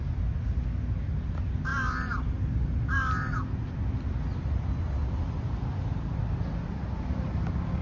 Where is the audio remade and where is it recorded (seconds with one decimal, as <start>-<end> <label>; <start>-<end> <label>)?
0.0-7.8 recorded